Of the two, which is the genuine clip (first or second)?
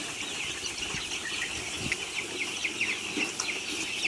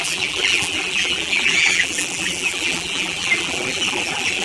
first